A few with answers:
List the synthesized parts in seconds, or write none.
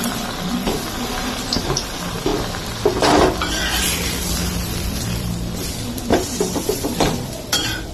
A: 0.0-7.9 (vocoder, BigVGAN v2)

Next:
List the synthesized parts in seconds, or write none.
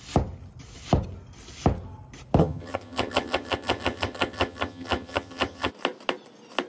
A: 2.4-5.7 (vocoder, HiFi-GAN)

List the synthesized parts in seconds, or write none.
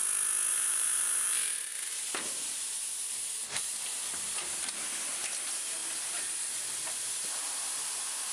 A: 0.5-5.8 (vocoder, BigVGAN v2); 6.8-8.3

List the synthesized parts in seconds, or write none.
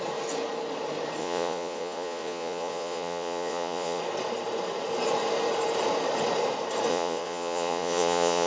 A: 1.2-4.0 (vocoder, Vocos); 6.9-8.5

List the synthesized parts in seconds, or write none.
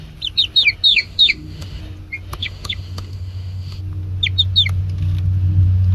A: 0.9-1.8 (autoencoder, DAC-VAE); 2.4-3.8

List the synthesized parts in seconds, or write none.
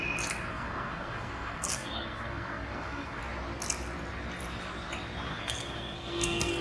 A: 0.5-3.2 (codec, SNAC); 5.3-6.6